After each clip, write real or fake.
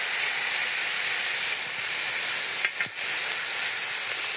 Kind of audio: real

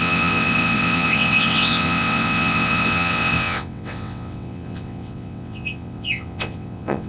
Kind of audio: fake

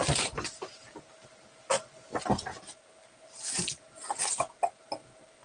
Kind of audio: real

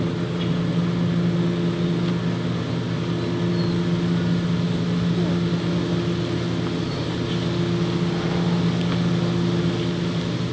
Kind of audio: real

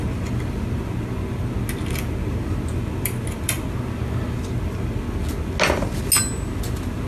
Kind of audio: real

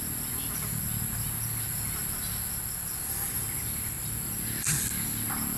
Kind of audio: real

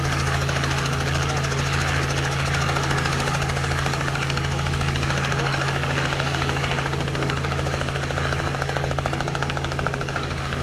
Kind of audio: fake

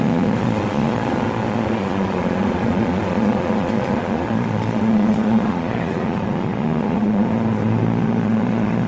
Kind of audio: fake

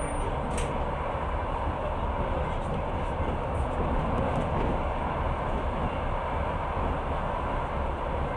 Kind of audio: real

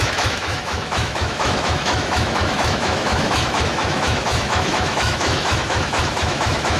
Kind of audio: fake